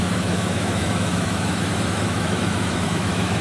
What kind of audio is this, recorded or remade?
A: remade